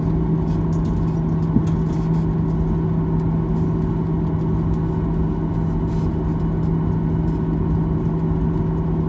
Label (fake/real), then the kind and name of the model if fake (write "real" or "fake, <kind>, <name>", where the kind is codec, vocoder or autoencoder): real